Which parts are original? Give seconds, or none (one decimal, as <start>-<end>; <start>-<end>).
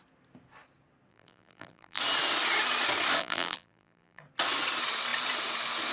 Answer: 0.0-1.1; 2.0-3.2; 4.2-5.9